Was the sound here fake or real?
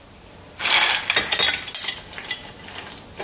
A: real